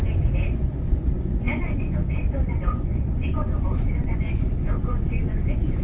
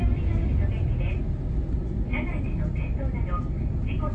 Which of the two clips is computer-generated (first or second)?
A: first